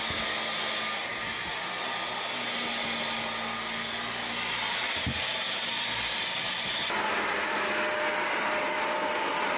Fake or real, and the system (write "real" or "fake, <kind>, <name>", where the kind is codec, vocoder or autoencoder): real